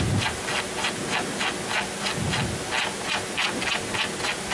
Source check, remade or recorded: recorded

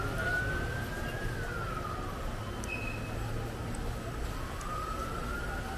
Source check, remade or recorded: recorded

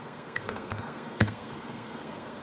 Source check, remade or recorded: remade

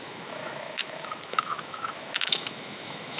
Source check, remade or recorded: remade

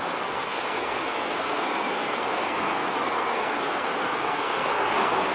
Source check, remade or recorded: remade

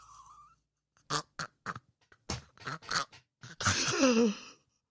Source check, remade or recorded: recorded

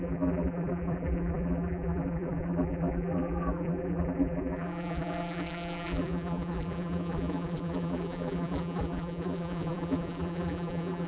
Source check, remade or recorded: remade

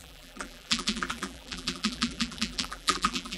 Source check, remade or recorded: remade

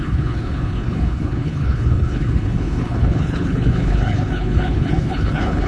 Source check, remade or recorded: remade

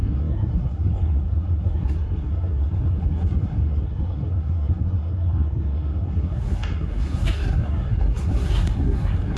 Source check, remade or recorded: remade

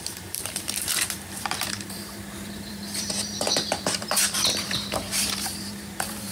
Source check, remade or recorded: remade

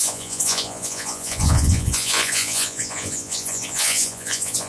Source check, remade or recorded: remade